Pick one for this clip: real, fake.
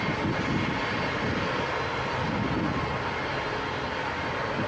real